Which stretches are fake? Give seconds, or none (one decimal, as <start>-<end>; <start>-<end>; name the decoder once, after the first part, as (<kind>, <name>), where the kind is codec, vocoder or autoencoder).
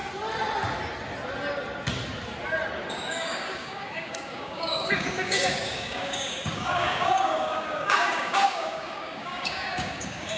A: 2.9-10.4 (codec, DAC)